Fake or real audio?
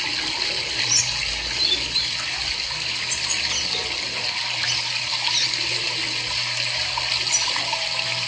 real